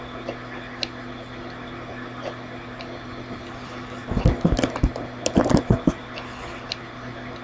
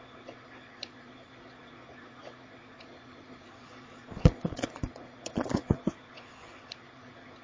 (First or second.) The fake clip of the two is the second